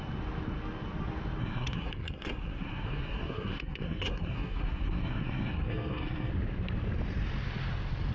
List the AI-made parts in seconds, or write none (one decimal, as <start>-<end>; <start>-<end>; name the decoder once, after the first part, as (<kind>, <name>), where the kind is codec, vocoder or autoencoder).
1.4-6.3 (codec, SNAC)